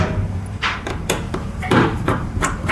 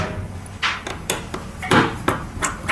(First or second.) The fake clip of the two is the first